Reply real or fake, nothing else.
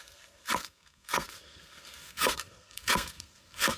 fake